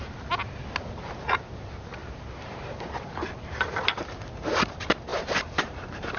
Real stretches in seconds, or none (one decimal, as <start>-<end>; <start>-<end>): 0.0-2.0; 2.7-5.1